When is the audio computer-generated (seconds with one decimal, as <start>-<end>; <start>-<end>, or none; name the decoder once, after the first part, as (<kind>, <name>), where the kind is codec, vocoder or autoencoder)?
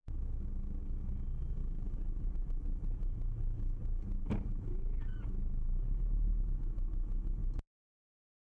1.6-6.3 (vocoder, BigVGAN v2); 7.4-8.0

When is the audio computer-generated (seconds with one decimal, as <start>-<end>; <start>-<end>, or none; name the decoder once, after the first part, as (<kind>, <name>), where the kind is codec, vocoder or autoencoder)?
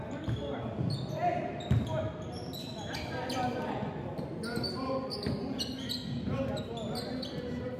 none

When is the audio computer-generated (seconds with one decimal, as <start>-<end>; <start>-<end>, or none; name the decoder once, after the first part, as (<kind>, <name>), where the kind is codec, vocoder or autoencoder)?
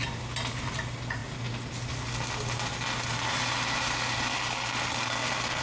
none